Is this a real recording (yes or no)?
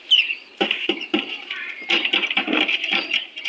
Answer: no